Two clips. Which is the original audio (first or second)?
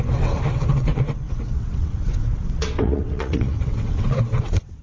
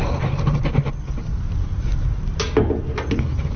second